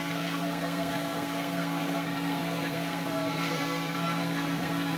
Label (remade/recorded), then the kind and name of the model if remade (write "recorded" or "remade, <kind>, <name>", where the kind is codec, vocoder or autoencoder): remade, codec, SNAC